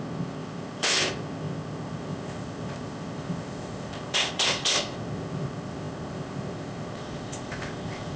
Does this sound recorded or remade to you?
remade